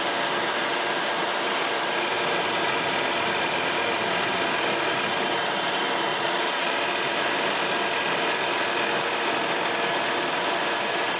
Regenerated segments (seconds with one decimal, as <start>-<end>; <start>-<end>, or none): 6.1-6.7